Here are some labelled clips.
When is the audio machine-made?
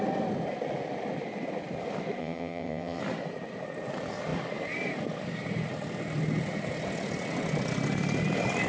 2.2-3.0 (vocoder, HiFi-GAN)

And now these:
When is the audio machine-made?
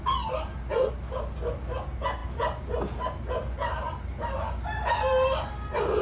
none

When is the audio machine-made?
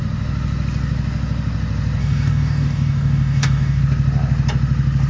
2.0-3.8 (codec, DAC)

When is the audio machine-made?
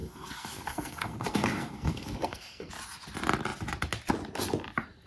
0.0-2.7 (codec, SNAC)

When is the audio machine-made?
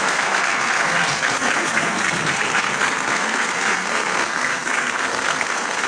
0.0-5.9 (codec, SNAC)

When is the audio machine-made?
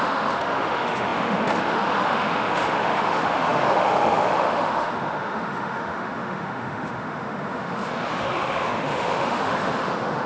0.0-10.3 (autoencoder, DAC-VAE)